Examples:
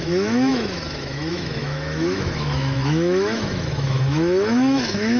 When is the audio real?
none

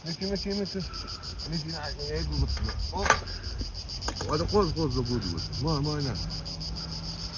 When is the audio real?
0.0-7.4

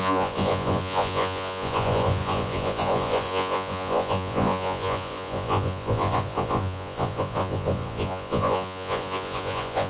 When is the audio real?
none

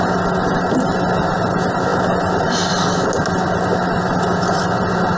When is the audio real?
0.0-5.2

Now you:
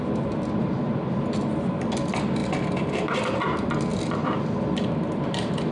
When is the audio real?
0.0-2.4; 3.3-3.9

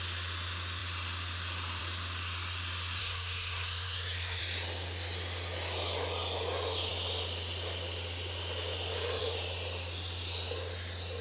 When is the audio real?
0.0-3.0; 4.4-11.2